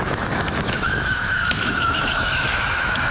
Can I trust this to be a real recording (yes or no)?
no